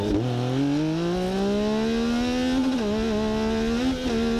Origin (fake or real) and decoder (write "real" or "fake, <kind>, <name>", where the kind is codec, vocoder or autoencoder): real